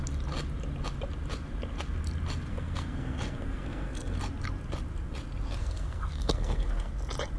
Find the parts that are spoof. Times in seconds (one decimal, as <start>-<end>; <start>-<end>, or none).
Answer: 2.5-4.2; 5.6-6.9